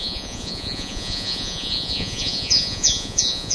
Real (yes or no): no